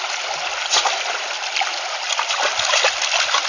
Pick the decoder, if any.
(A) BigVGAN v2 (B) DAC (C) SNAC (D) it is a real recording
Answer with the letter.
D